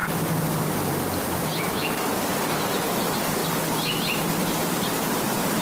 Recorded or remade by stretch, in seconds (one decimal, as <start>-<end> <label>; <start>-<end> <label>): 0.0-5.6 recorded